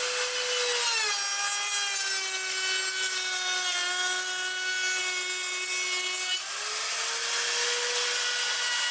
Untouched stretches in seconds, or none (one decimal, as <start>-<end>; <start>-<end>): 0.0-8.9